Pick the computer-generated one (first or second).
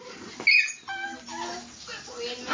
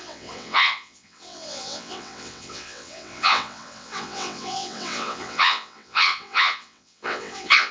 second